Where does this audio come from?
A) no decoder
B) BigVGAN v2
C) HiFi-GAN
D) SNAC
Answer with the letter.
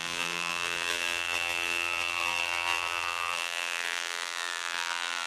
B